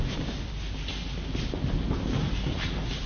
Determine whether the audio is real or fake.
real